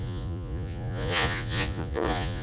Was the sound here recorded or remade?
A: remade